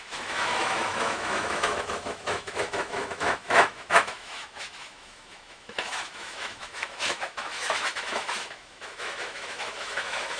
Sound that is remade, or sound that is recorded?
remade